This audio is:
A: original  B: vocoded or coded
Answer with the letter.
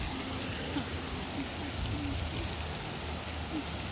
A